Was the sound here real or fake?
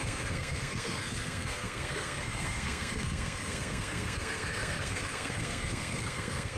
fake